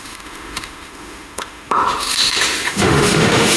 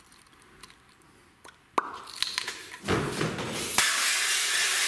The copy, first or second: first